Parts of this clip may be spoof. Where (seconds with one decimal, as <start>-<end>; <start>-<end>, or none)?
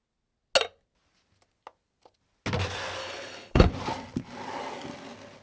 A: 3.0-3.7